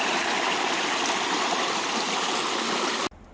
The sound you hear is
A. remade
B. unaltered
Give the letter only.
B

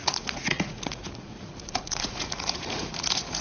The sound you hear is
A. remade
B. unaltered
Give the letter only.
A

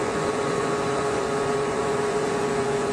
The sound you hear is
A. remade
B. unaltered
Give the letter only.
A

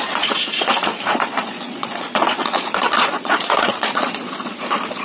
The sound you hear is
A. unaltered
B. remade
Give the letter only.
B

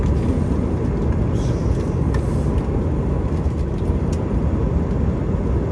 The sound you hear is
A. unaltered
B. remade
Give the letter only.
A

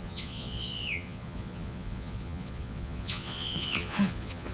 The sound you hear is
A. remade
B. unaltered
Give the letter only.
A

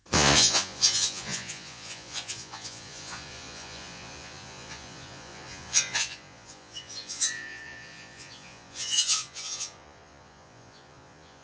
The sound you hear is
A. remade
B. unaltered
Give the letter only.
A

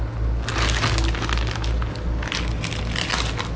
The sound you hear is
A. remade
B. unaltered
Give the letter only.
B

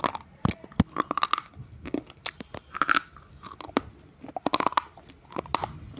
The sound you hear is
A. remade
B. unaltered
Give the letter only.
B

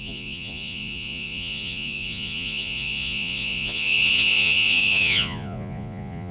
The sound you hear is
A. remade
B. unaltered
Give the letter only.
A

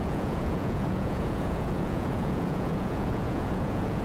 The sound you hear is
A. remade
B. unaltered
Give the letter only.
A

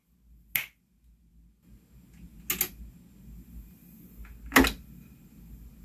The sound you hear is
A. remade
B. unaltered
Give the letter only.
B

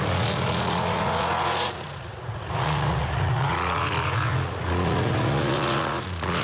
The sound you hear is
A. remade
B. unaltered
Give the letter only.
A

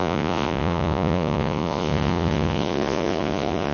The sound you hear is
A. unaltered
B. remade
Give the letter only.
B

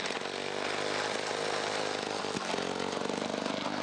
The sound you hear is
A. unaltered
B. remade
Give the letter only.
A